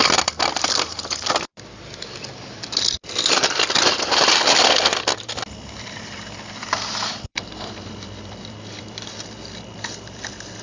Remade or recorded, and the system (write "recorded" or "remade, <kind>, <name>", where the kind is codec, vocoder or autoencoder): remade, vocoder, BigVGAN v2